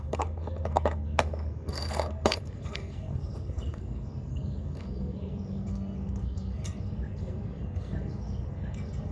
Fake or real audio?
fake